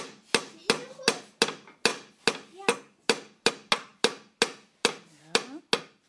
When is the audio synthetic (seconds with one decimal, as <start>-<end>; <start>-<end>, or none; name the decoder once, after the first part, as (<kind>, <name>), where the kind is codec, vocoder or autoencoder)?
none